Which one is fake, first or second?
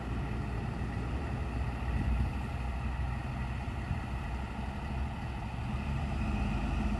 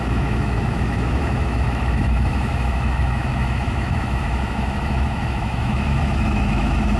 second